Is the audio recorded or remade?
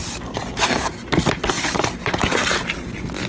recorded